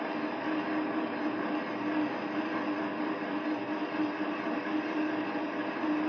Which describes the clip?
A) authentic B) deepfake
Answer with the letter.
A